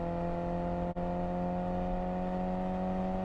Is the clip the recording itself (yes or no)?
yes